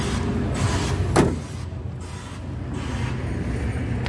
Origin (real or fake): real